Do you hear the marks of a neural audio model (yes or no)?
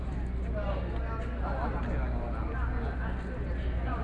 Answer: no